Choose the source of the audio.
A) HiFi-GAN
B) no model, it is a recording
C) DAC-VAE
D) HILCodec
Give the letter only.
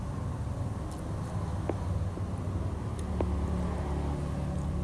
B